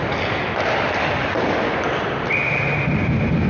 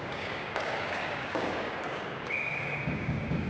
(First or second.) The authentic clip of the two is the first